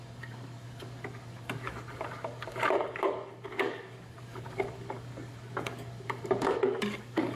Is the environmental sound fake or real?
fake